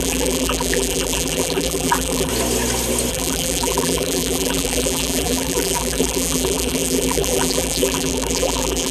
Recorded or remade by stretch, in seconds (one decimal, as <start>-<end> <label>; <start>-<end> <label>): 0.0-2.3 remade; 2.3-3.1 recorded; 3.1-8.9 remade